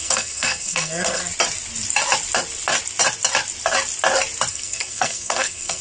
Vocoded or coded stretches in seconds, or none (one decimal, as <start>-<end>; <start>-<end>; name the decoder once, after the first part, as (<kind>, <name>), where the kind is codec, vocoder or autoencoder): 0.0-1.2 (codec, SNAC); 4.5-5.8